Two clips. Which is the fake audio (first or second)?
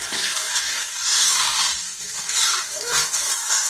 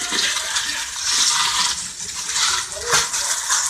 first